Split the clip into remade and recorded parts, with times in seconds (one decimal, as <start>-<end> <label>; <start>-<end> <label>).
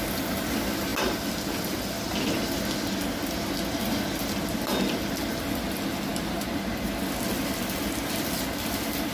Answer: 0.0-9.1 recorded